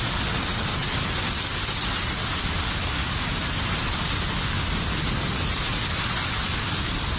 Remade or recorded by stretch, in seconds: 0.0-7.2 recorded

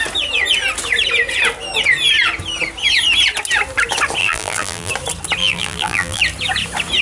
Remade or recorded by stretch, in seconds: 0.0-4.2 recorded; 4.2-4.9 remade; 4.9-5.4 recorded; 5.4-6.2 remade; 6.2-7.0 recorded

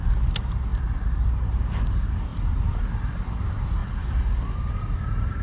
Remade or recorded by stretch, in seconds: 0.0-0.7 recorded; 0.7-1.2 remade; 1.2-2.3 recorded; 2.3-3.1 remade; 3.1-3.8 recorded; 3.8-4.7 remade; 4.7-5.4 recorded

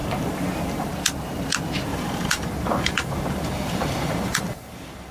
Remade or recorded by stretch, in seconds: 0.0-0.9 remade; 0.9-1.9 recorded; 1.9-5.1 remade